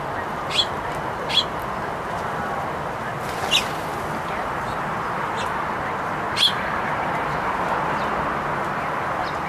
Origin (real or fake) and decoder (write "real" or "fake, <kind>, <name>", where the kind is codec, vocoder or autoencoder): real